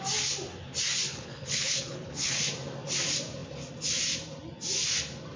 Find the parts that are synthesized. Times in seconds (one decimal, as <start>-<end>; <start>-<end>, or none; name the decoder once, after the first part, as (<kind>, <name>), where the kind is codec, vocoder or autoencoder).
1.1-2.3 (codec, HILCodec)